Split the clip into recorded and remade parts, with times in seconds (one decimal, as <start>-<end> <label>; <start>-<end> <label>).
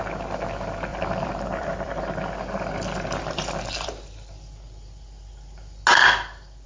0.0-0.9 recorded; 0.9-2.0 remade; 2.0-3.2 recorded; 3.2-3.9 remade; 3.9-6.7 recorded